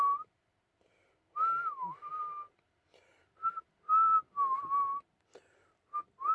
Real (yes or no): yes